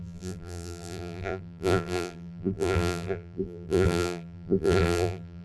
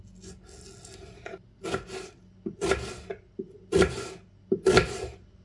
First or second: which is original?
second